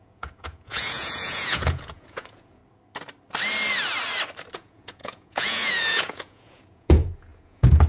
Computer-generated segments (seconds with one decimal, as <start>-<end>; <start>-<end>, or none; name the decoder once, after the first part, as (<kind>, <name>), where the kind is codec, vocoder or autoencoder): 0.0-2.6 (vocoder, Vocos); 4.5-7.9